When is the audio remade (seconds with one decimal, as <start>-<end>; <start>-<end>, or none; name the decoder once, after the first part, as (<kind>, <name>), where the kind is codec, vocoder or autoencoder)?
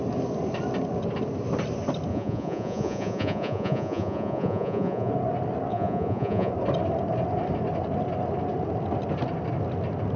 2.1-5.1 (vocoder, Vocos); 5.7-6.5